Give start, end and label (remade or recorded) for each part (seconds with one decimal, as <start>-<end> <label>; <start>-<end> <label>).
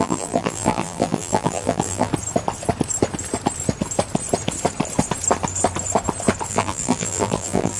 0.0-2.1 remade; 2.1-6.5 recorded; 6.5-7.8 remade